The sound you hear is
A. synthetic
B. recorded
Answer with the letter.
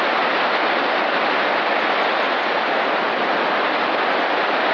B